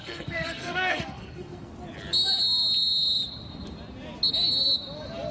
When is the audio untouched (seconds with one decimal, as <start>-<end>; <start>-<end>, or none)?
1.7-5.3